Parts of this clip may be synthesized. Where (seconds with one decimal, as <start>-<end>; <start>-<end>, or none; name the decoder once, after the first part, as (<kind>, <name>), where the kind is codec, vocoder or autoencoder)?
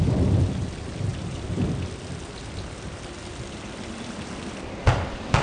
none